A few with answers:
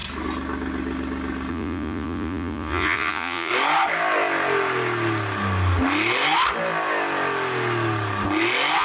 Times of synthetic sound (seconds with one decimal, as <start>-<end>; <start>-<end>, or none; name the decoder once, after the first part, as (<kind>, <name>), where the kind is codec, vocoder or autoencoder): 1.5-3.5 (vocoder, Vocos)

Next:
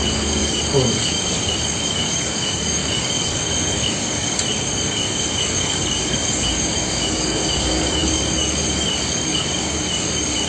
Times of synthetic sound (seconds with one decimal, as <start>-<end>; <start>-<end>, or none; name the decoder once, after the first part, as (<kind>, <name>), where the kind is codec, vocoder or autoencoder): 0.0-10.5 (codec, DAC)

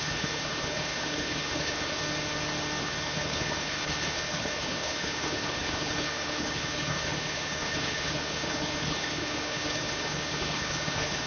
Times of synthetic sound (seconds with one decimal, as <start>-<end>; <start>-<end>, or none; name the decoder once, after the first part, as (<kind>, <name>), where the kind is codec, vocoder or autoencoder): 0.0-2.0 (codec, HILCodec); 2.8-11.3

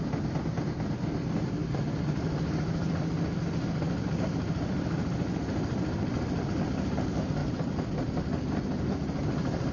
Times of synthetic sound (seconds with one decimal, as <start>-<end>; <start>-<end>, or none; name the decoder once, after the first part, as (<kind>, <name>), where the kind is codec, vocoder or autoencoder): none

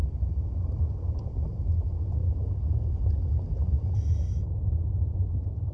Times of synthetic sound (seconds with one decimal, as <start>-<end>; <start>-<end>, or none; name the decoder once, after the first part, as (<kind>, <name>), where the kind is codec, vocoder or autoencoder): 1.1-2.2 (vocoder, BigVGAN v2); 4.7-5.7

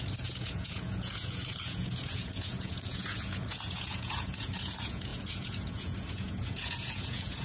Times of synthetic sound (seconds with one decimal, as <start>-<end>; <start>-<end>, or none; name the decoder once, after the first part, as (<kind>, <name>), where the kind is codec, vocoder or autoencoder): 0.0-7.4 (vocoder, Vocos)

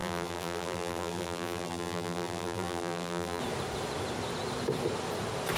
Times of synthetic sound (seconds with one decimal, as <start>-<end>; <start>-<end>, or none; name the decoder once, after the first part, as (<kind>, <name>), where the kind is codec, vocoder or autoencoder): 0.0-3.4 (vocoder, BigVGAN v2)